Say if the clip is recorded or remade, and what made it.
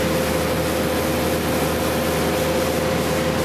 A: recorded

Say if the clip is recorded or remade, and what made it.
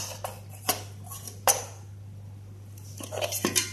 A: remade, vocoder, BigVGAN v2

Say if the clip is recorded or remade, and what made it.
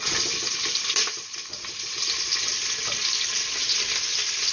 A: remade, vocoder, BigVGAN v2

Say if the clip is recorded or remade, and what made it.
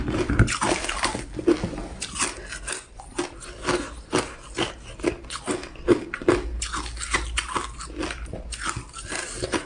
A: recorded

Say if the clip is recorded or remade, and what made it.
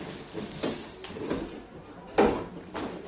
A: recorded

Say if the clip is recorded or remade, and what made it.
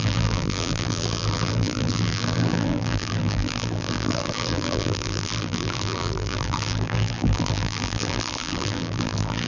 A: remade, vocoder, BigVGAN v2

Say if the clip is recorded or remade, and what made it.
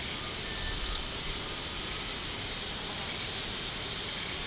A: recorded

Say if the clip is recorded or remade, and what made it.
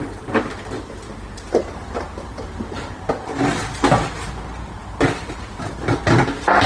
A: remade, vocoder, BigVGAN v2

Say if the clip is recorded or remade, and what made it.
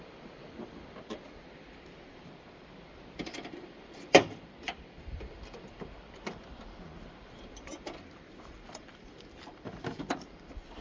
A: remade, vocoder, BigVGAN v2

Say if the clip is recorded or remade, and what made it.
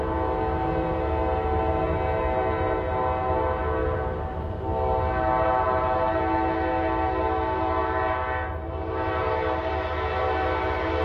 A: recorded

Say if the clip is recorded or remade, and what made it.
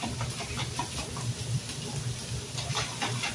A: recorded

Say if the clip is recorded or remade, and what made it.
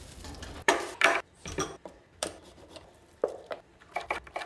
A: remade, vocoder, BigVGAN v2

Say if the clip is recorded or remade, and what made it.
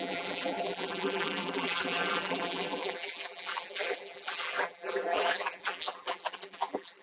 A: remade, vocoder, BigVGAN v2